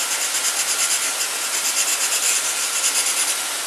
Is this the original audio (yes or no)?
yes